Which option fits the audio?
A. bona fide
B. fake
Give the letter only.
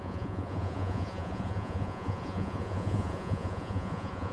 B